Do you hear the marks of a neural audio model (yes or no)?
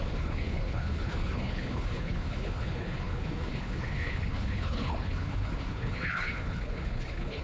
yes